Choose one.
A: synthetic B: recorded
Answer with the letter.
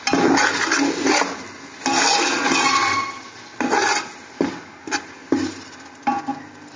B